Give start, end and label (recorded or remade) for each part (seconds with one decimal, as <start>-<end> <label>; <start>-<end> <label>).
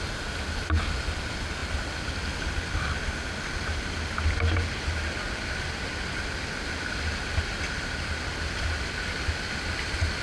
0.0-10.2 recorded